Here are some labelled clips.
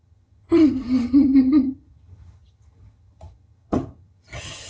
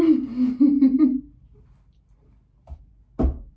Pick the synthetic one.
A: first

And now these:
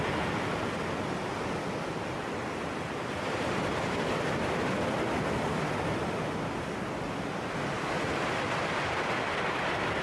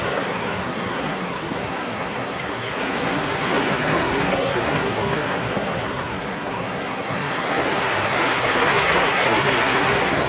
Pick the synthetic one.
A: second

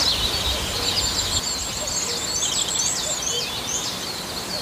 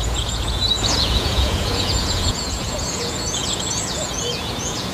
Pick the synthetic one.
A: second